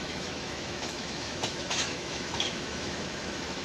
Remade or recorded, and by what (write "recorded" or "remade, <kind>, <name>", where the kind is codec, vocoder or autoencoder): remade, autoencoder, DAC-VAE